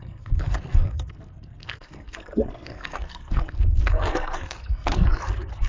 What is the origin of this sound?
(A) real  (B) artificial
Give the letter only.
B